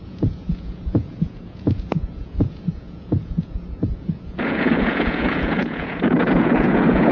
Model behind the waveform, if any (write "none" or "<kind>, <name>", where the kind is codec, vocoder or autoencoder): vocoder, Vocos